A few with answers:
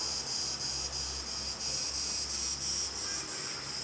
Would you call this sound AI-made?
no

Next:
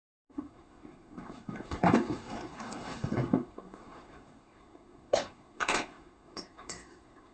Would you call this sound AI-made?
yes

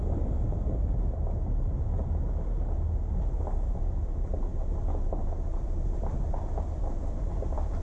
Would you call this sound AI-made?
no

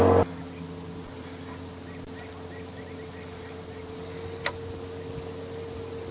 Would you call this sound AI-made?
no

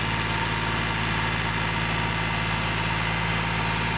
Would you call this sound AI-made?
no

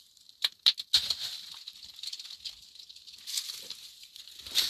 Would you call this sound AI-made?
no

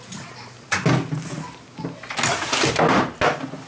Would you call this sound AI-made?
no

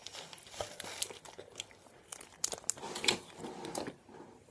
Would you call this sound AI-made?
no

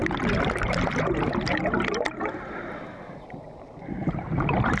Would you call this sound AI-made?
no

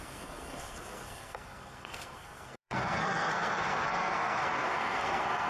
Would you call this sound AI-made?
yes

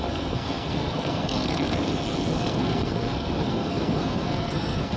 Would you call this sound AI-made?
yes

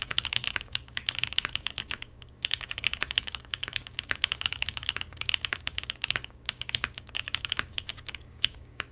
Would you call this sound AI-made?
yes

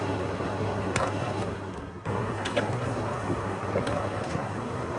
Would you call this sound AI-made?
yes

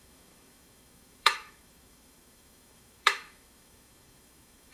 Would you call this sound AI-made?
yes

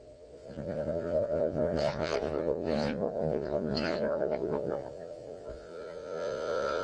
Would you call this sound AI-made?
yes